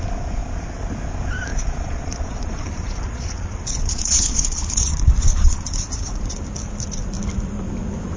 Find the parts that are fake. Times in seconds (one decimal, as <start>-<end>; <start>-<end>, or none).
1.5-6.4